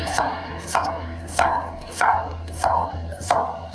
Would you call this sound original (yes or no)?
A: no